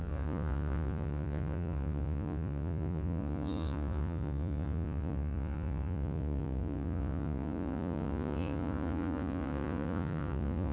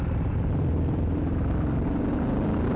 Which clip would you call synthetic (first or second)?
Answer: first